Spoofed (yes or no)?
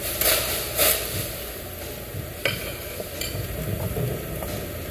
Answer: no